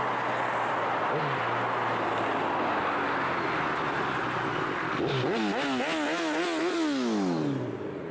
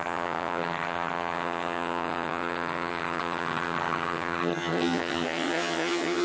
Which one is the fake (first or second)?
second